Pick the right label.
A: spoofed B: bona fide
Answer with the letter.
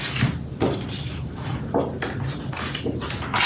B